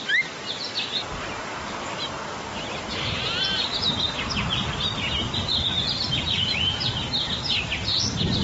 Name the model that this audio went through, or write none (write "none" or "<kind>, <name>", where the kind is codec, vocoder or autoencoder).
none